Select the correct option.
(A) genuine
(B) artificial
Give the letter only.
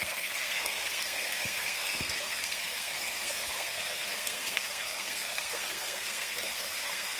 B